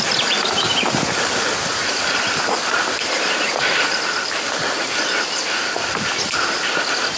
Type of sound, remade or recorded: remade